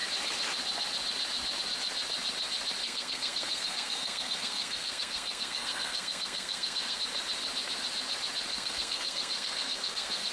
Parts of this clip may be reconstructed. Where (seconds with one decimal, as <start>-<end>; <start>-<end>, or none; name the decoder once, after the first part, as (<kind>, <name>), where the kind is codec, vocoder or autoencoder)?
2.8-7.0 (codec, SNAC); 8.5-10.3